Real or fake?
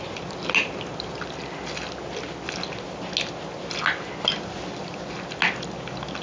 real